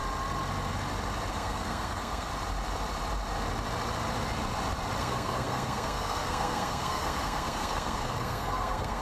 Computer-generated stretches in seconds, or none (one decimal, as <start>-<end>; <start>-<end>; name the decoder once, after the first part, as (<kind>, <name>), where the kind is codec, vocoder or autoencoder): 1.3-2.3 (codec, SNAC); 5.0-9.0